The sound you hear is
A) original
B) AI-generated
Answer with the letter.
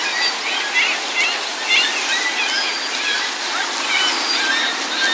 A